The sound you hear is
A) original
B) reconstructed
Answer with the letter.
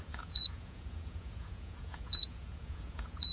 B